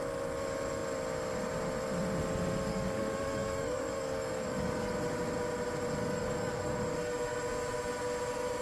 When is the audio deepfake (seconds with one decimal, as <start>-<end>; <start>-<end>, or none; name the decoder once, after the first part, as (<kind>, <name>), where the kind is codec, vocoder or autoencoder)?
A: 2.7-4.9 (codec, DAC); 6.0-6.7